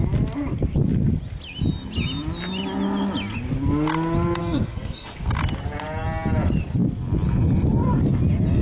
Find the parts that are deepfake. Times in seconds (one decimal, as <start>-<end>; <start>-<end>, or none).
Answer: 4.4-5.3